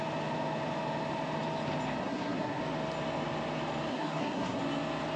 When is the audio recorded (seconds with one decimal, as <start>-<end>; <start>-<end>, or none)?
0.0-2.0; 2.6-3.9; 4.6-5.2